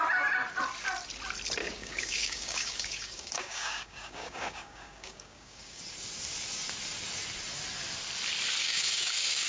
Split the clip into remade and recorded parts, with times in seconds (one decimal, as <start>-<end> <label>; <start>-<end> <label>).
0.0-1.6 recorded; 1.6-5.8 remade; 5.8-8.6 recorded; 8.6-9.5 remade